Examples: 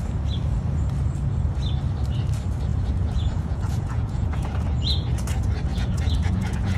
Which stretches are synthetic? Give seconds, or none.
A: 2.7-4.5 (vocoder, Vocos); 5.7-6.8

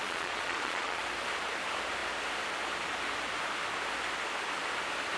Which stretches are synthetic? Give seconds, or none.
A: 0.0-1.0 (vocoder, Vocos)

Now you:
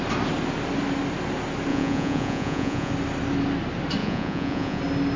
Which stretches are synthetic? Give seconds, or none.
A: 1.7-2.9 (vocoder, Vocos); 4.0-4.8

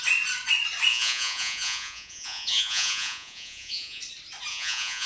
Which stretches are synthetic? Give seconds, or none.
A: 0.9-4.0 (vocoder, Vocos); 4.5-5.1

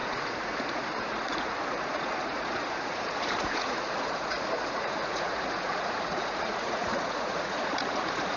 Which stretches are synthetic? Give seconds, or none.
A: 0.0-8.4 (vocoder, Vocos)

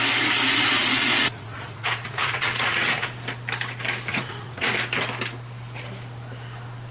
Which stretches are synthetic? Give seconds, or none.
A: 0.8-3.1 (vocoder, Vocos); 4.1-4.7

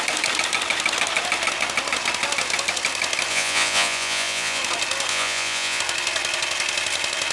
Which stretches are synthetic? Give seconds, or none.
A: 3.3-4.6 (vocoder, Vocos); 5.1-5.8

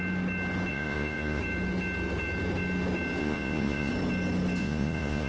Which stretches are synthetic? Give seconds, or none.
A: 0.7-1.4 (vocoder, Vocos); 3.2-3.9; 4.6-5.3